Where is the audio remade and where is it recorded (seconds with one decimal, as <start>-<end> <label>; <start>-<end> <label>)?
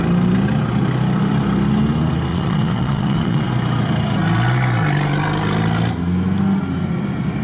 0.0-2.3 recorded; 2.3-3.5 remade; 3.5-7.4 recorded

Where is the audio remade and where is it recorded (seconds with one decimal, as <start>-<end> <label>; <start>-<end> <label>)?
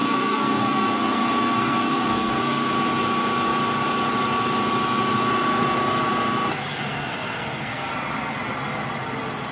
0.0-2.7 remade; 2.7-6.7 recorded; 6.7-7.9 remade; 7.9-9.5 recorded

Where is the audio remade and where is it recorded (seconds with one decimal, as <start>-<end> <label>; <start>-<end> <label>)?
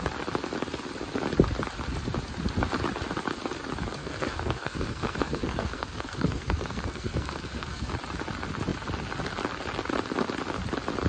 0.0-4.0 recorded; 4.0-7.9 remade; 7.9-11.1 recorded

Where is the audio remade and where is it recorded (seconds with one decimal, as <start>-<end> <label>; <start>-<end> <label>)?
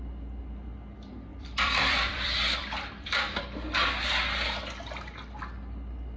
0.0-1.3 recorded; 1.3-3.4 remade; 3.4-6.2 recorded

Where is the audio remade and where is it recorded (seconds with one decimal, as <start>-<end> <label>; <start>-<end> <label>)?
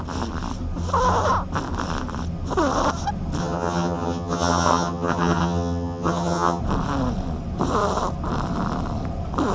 0.0-3.4 recorded; 3.4-6.6 remade; 6.6-9.5 recorded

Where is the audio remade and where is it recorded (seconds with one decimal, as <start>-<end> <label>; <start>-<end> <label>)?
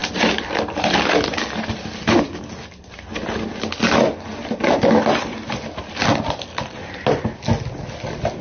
0.0-8.4 recorded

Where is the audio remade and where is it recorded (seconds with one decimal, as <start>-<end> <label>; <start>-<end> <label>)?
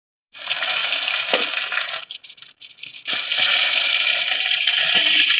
0.0-0.8 remade; 0.8-1.9 recorded; 1.9-5.4 remade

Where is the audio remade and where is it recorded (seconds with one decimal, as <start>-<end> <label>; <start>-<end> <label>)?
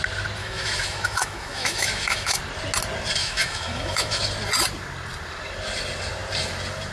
0.0-0.4 recorded; 0.4-2.4 remade; 2.4-3.2 recorded; 3.2-4.2 remade; 4.2-6.9 recorded